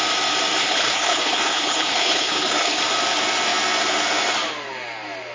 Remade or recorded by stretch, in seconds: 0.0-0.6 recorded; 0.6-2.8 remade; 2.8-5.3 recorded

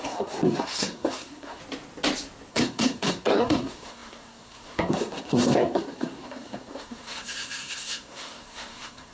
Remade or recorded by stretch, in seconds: 0.0-1.6 remade; 1.6-2.5 recorded; 2.5-9.1 remade

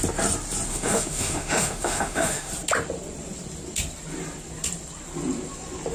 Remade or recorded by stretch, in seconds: 0.0-0.7 recorded; 0.7-2.5 remade; 2.5-5.9 recorded

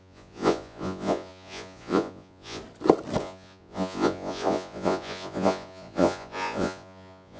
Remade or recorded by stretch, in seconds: 0.0-2.6 remade; 2.6-3.2 recorded; 3.2-7.4 remade

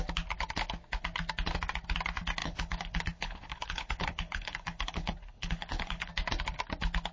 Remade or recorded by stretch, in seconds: 0.0-2.4 recorded; 2.4-6.1 remade; 6.1-7.1 recorded

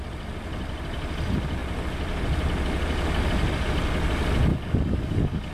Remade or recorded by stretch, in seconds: 0.0-4.5 recorded; 4.5-5.5 remade

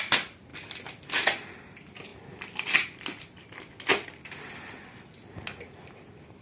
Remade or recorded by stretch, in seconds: 0.0-6.4 recorded

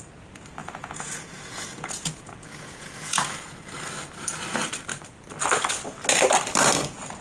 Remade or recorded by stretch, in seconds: 0.0-0.6 recorded; 0.6-3.8 remade; 3.8-7.2 recorded